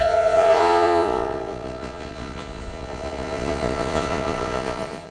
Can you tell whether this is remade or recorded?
remade